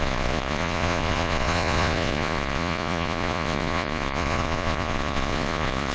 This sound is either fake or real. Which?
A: fake